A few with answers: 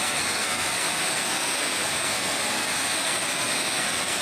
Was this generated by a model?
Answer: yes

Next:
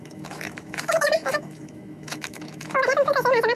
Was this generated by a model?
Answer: yes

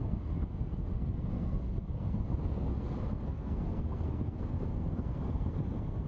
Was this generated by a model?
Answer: yes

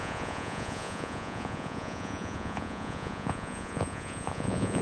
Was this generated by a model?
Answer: yes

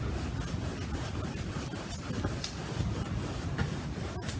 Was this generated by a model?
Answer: no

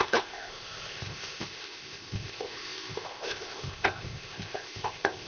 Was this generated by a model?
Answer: yes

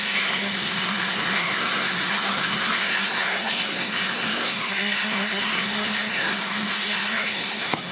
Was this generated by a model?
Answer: yes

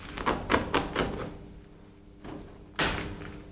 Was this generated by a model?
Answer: no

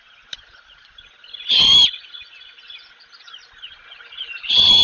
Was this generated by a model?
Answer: yes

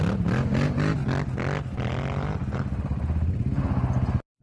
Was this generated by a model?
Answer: no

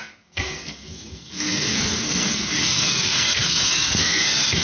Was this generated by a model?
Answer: yes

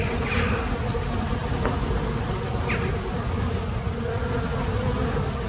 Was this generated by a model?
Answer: no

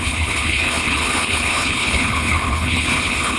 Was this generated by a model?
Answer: yes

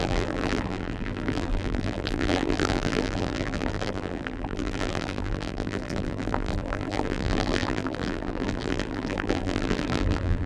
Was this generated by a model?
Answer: yes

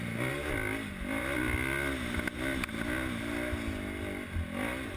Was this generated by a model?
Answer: no